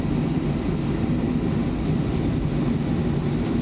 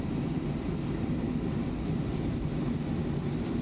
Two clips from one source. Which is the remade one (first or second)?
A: second